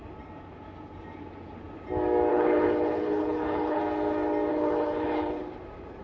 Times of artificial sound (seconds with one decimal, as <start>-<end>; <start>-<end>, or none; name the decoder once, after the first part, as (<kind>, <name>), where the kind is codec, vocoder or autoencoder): 2.3-3.8 (codec, HILCodec); 4.5-5.4